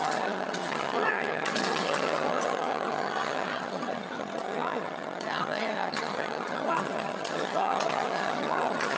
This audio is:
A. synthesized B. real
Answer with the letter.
A